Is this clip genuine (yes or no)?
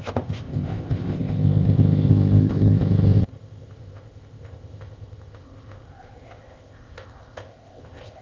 no